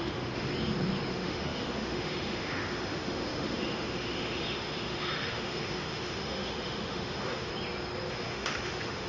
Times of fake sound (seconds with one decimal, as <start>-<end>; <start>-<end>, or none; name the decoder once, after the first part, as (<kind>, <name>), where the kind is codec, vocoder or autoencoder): 0.0-0.5 (autoencoder, DAC-VAE); 1.1-7.5; 8.1-9.1